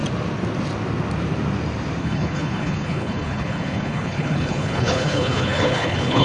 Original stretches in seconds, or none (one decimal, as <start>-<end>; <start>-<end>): 0.0-2.0